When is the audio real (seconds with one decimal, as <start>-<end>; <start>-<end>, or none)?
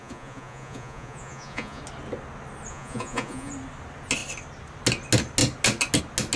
1.8-2.7; 3.5-6.4